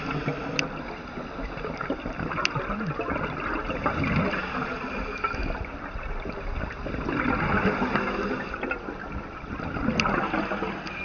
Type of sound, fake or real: real